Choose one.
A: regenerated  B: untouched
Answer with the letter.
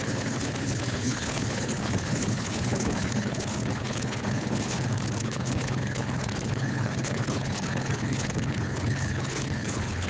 A